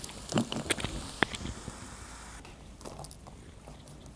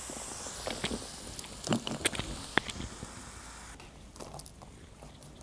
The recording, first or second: second